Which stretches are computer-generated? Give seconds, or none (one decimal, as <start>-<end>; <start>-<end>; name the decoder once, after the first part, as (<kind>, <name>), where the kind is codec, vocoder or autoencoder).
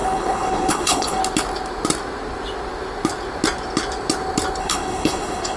0.0-1.2 (codec, HILCodec); 4.6-5.6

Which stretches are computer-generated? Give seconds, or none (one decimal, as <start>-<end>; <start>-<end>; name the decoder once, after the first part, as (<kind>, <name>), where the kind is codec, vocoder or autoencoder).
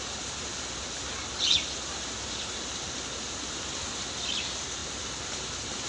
none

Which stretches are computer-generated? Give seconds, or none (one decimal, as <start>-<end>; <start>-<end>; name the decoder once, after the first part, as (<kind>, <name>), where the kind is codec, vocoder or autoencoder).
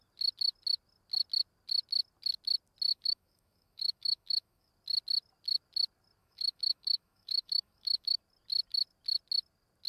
2.9-4.7 (autoencoder, DAC-VAE); 6.2-8.2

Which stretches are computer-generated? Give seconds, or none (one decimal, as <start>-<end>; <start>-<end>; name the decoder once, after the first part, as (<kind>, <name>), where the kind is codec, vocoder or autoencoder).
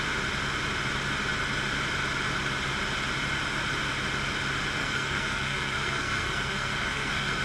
4.8-7.4 (codec, SNAC)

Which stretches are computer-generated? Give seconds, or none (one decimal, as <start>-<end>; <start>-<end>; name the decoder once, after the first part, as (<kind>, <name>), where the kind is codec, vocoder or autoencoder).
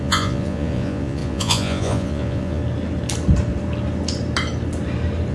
0.0-2.6 (vocoder, Vocos)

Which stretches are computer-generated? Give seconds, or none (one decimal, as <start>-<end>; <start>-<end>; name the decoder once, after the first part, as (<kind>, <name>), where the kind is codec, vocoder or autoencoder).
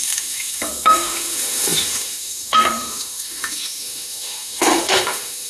0.0-5.5 (autoencoder, DAC-VAE)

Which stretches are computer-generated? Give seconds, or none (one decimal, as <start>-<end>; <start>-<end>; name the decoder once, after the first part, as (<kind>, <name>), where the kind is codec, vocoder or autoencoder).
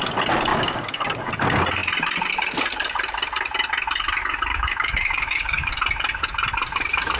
0.5-1.3 (codec, DAC); 4.5-5.7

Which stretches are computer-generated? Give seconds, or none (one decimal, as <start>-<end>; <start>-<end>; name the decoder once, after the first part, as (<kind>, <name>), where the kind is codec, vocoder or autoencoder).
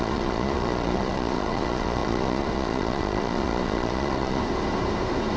0.0-4.4 (vocoder, Vocos)